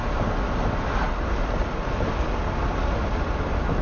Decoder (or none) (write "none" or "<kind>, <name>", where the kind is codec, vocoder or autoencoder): none